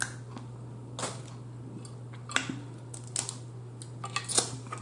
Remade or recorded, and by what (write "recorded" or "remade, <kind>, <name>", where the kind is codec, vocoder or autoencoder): recorded